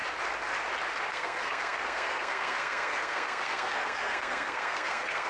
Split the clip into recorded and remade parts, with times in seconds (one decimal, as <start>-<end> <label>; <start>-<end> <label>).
0.0-1.1 recorded; 1.1-5.3 remade